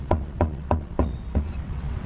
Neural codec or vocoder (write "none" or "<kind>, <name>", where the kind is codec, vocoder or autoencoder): vocoder, WaveNeXt